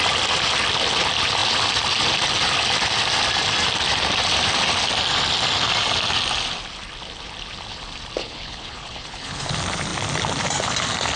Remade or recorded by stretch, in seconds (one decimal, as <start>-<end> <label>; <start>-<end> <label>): 0.0-8.2 recorded; 8.2-9.5 remade; 9.5-11.2 recorded